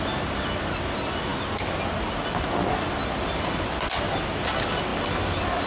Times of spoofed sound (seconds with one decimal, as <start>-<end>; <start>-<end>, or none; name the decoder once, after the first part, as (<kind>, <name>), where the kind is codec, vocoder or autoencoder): none